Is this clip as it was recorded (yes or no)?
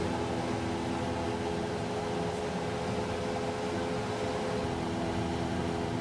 yes